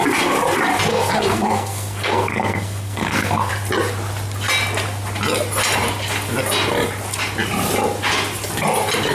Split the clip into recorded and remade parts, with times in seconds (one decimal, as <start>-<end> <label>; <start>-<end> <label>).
0.0-0.9 recorded; 0.9-3.5 remade; 3.5-9.1 recorded